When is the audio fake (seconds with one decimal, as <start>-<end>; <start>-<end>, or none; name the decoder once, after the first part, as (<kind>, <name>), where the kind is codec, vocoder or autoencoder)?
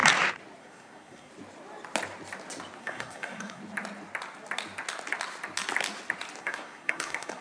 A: 0.6-1.3 (codec, SNAC); 2.8-3.6; 6.4-7.4